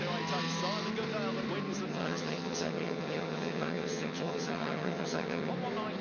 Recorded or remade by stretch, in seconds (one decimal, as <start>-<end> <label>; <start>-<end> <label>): 0.0-1.9 recorded; 1.9-5.5 remade; 5.5-6.0 recorded

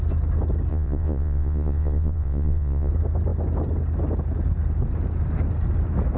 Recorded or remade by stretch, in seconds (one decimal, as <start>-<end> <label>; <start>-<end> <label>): 0.0-0.7 recorded; 0.7-2.9 remade; 2.9-6.2 recorded

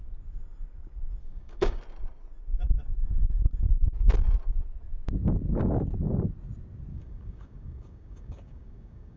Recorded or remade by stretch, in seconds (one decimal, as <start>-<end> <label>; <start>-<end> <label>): 0.0-1.2 recorded; 1.2-1.8 remade; 1.8-6.9 recorded; 6.9-9.2 remade

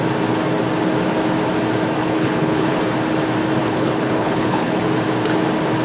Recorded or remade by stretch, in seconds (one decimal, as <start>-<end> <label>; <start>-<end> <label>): 0.0-2.0 recorded; 2.0-2.8 remade; 2.8-3.6 recorded; 3.6-4.8 remade; 4.8-5.8 recorded

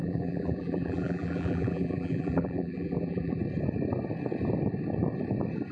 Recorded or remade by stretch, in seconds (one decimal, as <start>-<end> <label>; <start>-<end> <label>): 0.0-3.4 remade; 3.4-5.7 recorded

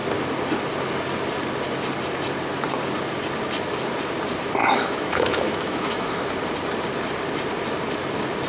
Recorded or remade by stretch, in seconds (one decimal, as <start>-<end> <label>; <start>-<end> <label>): 0.0-4.6 recorded; 4.6-6.3 remade; 6.3-8.5 recorded